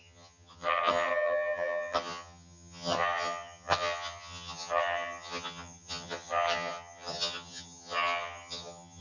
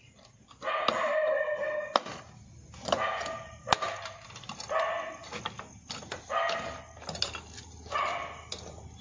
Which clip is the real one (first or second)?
second